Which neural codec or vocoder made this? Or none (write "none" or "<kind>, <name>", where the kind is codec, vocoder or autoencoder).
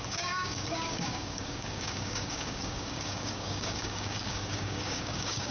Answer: codec, DAC